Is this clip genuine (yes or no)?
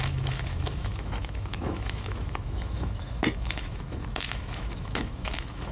no